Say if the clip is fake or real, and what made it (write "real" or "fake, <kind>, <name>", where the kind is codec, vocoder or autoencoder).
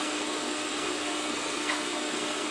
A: fake, codec, SNAC